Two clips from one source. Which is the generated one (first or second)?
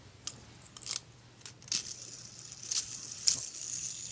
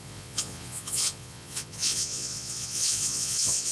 second